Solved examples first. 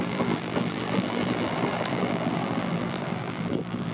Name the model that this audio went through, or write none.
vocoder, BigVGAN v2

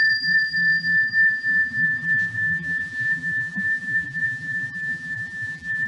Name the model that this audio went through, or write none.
vocoder, BigVGAN v2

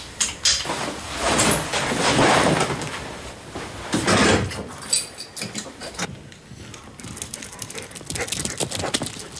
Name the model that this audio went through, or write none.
none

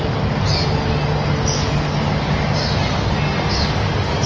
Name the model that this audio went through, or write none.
none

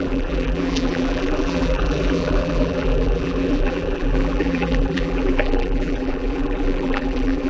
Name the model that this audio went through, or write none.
vocoder, BigVGAN v2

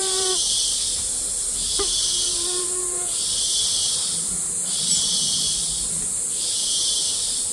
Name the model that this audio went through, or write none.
vocoder, BigVGAN v2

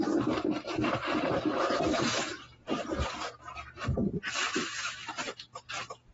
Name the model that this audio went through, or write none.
none